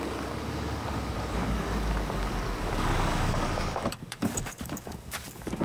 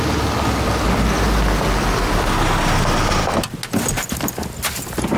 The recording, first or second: second